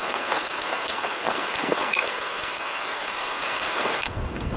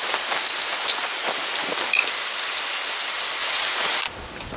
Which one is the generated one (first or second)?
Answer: first